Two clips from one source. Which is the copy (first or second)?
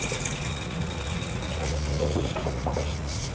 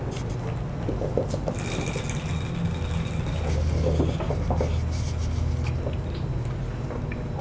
first